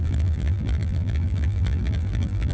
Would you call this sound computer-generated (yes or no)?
yes